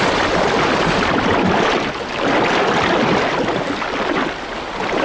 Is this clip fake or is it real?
real